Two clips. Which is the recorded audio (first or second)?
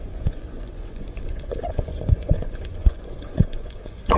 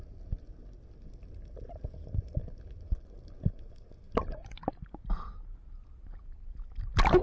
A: second